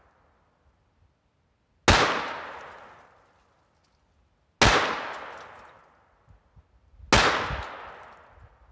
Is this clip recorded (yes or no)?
yes